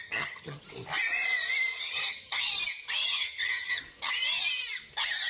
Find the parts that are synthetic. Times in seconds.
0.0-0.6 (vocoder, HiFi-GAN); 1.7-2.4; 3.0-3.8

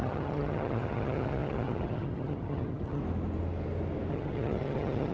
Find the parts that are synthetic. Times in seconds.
0.0-3.0 (vocoder, HiFi-GAN); 4.1-5.1

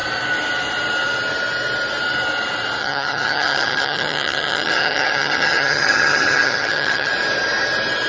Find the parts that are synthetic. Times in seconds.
2.8-7.1 (vocoder, HiFi-GAN)